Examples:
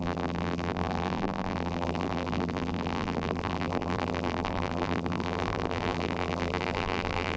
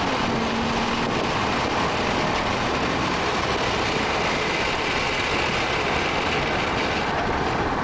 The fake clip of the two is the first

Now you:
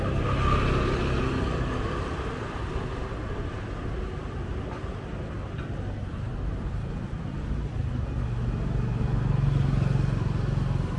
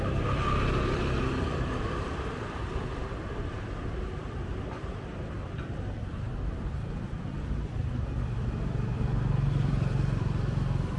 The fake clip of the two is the second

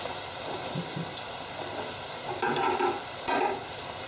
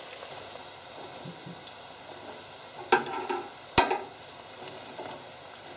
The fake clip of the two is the first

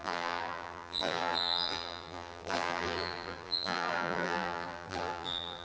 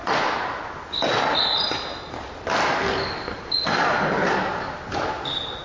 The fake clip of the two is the first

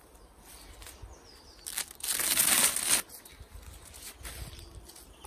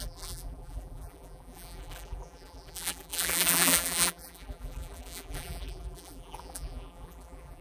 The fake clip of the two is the second